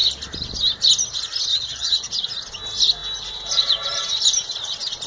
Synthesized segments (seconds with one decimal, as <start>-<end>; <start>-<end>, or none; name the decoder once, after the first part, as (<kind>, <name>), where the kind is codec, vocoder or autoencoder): 1.5-2.1 (vocoder, HiFi-GAN)